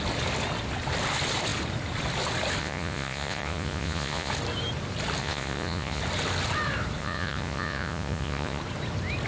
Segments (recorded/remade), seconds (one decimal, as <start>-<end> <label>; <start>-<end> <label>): 0.0-2.6 recorded; 2.6-4.3 remade; 4.3-5.2 recorded; 5.2-6.0 remade; 6.0-7.0 recorded; 7.0-8.6 remade; 8.6-9.3 recorded